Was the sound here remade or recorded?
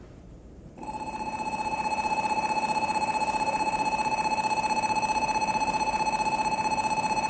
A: remade